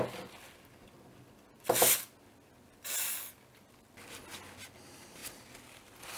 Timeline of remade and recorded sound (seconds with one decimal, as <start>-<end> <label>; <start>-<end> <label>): 0.0-6.2 recorded